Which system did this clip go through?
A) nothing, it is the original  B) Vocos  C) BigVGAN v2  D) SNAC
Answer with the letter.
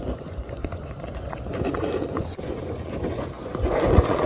B